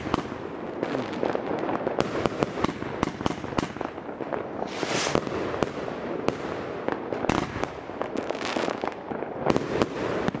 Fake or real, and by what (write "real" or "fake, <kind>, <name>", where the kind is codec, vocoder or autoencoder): real